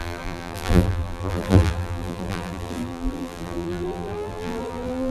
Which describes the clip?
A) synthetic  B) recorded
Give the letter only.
A